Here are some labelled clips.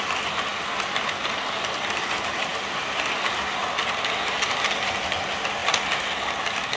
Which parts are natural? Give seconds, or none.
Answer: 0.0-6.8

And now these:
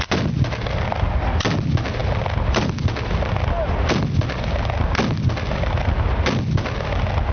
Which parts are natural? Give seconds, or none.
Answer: 0.0-7.3

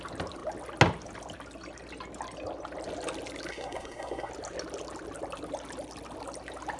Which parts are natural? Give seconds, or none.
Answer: 0.0-3.5; 4.3-6.8

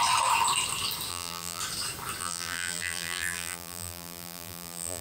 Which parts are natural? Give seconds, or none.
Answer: 0.0-1.1; 1.6-2.2

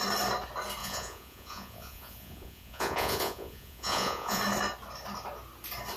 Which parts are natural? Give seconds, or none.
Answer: 0.0-0.8; 4.4-6.0